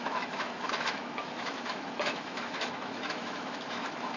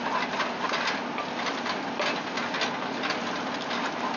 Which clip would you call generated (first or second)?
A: first